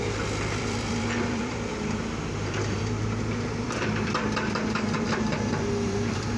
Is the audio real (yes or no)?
no